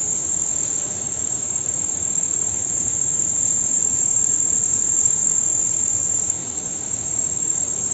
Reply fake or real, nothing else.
fake